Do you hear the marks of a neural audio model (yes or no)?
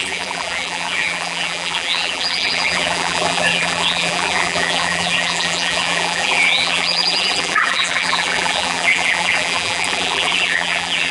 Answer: yes